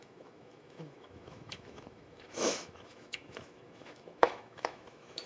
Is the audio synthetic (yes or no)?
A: yes